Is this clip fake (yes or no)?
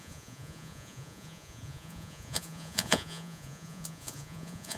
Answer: yes